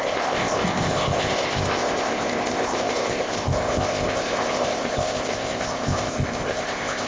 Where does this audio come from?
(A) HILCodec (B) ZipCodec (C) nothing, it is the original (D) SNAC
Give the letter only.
B